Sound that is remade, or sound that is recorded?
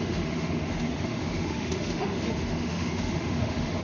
remade